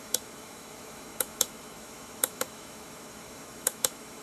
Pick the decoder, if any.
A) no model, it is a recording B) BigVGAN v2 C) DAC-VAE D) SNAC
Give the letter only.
C